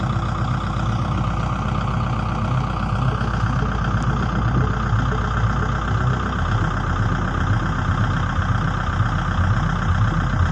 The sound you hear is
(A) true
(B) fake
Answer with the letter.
A